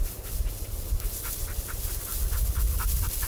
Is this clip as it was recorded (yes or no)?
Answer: yes